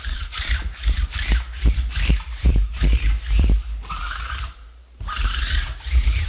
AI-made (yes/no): yes